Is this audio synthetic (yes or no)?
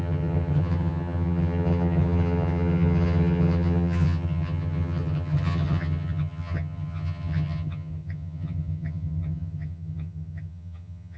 yes